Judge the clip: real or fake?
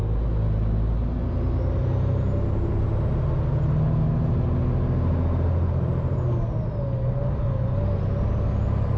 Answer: real